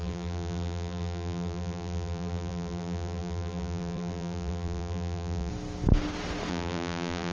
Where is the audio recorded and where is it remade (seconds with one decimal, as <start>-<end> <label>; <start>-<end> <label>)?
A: 0.0-5.5 remade; 5.5-6.5 recorded; 6.5-7.3 remade